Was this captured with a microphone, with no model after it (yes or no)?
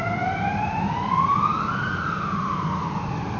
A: yes